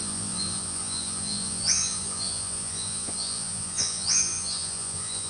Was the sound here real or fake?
fake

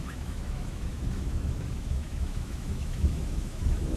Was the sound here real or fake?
fake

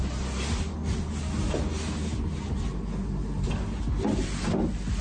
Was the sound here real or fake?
real